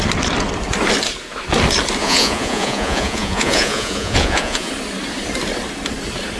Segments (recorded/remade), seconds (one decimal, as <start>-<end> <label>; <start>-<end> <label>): 0.0-2.0 recorded; 2.0-4.7 remade; 4.7-6.4 recorded